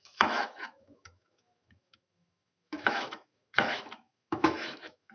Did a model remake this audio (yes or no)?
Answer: yes